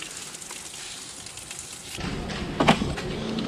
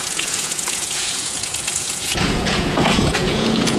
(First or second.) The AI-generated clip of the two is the second